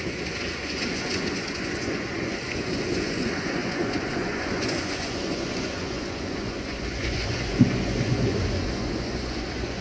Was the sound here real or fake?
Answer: fake